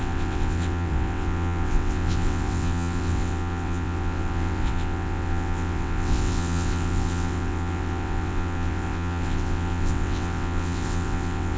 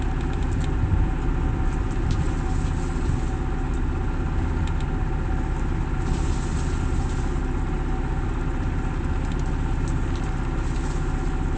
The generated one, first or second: first